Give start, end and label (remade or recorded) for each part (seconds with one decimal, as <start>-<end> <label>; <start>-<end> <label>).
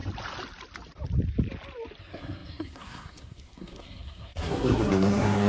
0.0-2.0 recorded; 2.0-5.5 remade